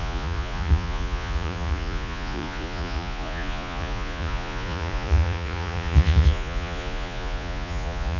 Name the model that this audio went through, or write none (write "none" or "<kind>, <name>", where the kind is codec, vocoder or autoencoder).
vocoder, Vocos